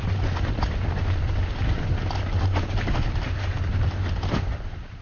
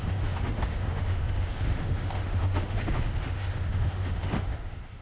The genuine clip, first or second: first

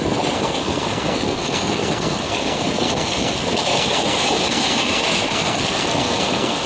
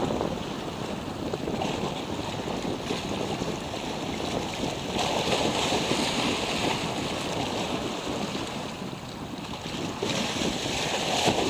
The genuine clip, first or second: second